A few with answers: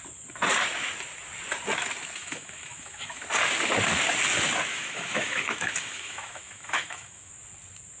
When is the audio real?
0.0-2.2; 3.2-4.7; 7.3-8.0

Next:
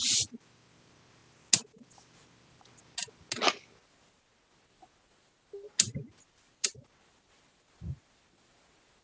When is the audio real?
0.0-9.0